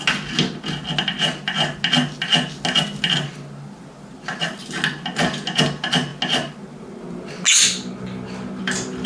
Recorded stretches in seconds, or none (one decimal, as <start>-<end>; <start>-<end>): 0.0-9.1